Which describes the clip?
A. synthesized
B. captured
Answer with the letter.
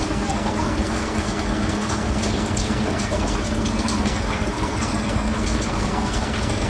A